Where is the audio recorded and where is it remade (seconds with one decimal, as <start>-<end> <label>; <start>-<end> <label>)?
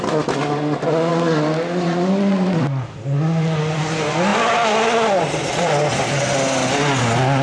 0.0-7.4 recorded